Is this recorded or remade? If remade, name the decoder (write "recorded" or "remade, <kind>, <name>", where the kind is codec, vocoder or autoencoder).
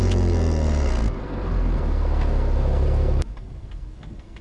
remade, codec, SNAC